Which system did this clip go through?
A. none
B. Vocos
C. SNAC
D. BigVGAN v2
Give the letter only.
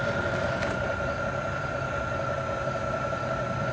A